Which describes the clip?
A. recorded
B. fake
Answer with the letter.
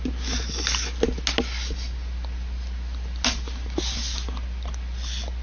A